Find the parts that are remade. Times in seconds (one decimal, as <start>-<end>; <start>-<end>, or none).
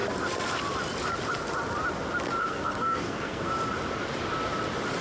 2.4-3.5